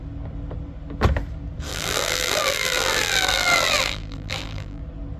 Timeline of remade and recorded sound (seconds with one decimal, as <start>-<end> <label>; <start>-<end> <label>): 0.0-1.7 recorded; 1.7-4.8 remade; 4.8-5.2 recorded